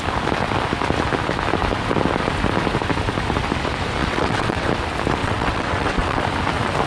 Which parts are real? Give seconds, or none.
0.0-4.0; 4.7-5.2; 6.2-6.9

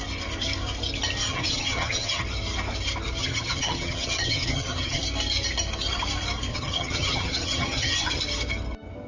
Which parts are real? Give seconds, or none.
0.0-1.2; 2.2-3.2; 5.0-6.5; 8.2-9.1

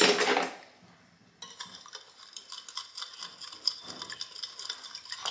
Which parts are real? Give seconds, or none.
0.0-5.3

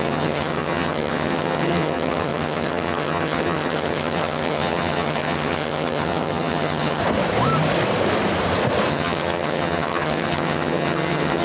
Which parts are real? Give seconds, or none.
7.0-8.9

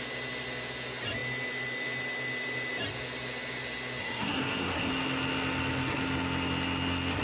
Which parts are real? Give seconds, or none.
0.0-4.0; 4.9-7.2